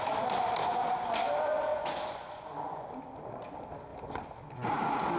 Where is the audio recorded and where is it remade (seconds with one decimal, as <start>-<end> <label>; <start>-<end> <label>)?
0.0-0.6 recorded; 0.6-1.1 remade; 1.1-1.7 recorded; 1.7-2.9 remade; 2.9-5.2 recorded